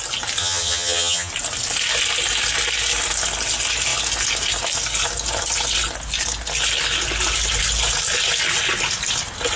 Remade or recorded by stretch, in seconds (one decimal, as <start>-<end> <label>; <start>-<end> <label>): 0.0-0.4 recorded; 0.4-1.3 remade; 1.3-9.6 recorded